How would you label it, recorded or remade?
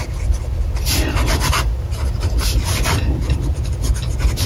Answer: recorded